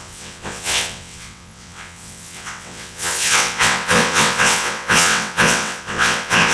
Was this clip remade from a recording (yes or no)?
yes